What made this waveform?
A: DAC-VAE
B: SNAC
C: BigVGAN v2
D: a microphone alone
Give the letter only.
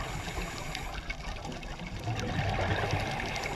D